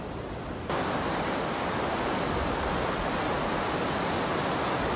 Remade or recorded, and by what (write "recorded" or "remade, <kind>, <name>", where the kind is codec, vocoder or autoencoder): recorded